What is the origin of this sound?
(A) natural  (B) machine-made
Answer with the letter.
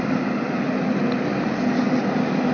A